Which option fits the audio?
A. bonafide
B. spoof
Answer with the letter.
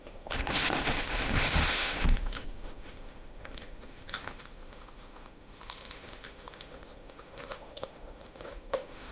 B